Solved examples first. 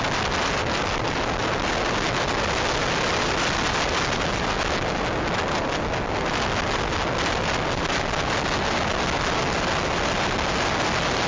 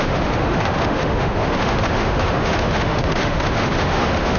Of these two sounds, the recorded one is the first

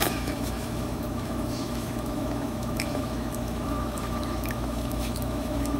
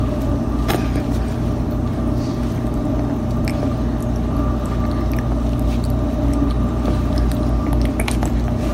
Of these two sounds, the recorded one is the second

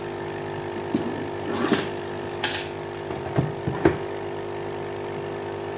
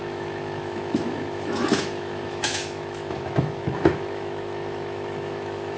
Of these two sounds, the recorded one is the first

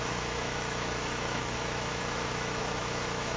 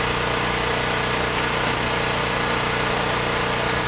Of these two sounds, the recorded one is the second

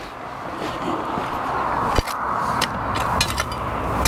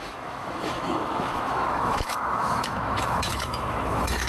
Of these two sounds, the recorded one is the first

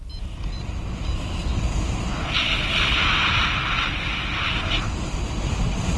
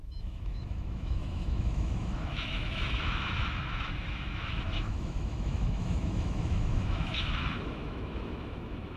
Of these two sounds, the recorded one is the first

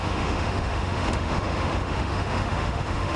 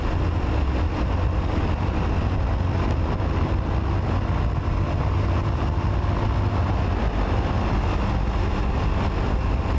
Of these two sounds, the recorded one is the second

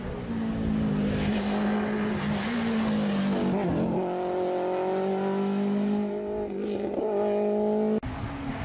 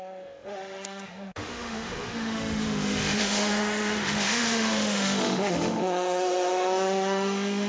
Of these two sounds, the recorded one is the first